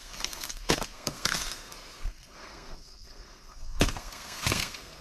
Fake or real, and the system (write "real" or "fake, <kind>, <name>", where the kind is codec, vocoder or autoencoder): fake, codec, SNAC